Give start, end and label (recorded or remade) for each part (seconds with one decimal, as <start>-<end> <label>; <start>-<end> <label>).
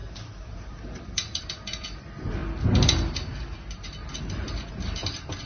0.0-2.4 remade; 2.4-4.2 recorded; 4.2-5.5 remade